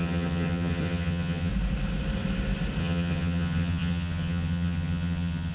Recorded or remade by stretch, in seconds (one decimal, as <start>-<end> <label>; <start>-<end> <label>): 0.0-1.5 remade; 1.5-2.8 recorded; 2.8-5.5 remade